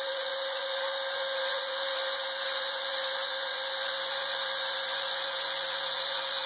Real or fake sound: fake